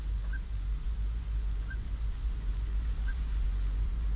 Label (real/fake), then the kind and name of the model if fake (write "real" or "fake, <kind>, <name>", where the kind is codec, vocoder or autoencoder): fake, vocoder, Vocos